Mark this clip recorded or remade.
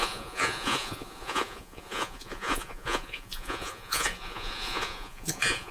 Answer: remade